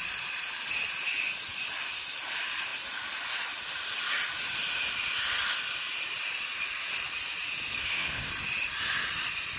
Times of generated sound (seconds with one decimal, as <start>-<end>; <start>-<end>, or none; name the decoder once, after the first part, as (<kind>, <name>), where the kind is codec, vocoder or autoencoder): 7.8-8.3 (codec, SNAC)

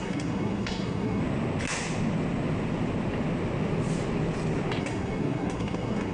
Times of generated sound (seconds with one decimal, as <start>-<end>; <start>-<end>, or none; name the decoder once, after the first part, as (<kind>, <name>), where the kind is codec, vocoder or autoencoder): 0.0-1.2 (codec, SNAC); 4.8-6.1